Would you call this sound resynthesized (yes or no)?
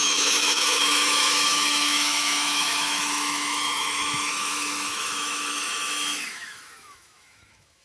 yes